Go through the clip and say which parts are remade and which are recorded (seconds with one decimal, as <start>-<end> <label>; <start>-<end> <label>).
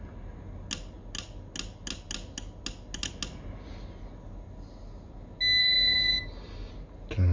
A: 0.0-5.6 recorded; 5.6-6.7 remade; 6.7-7.3 recorded